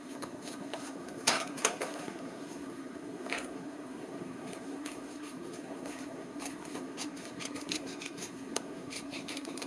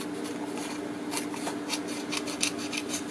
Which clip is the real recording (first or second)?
second